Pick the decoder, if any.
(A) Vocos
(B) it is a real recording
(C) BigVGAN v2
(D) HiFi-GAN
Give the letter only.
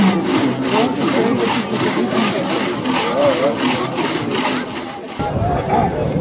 B